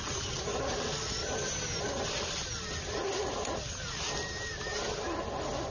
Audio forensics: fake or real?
real